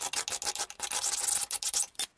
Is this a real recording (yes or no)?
yes